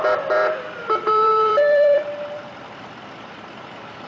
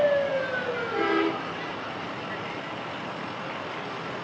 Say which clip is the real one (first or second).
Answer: second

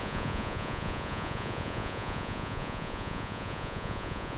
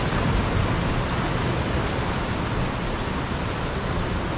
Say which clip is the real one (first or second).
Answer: second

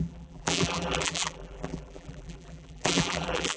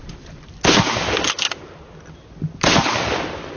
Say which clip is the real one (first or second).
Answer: second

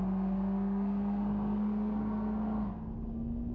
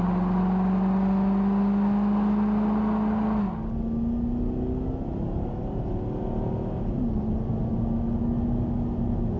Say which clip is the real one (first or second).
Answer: second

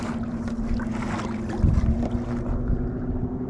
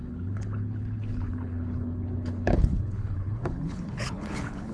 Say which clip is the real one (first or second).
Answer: first